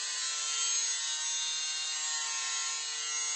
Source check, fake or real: real